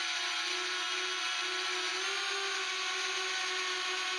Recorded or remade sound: recorded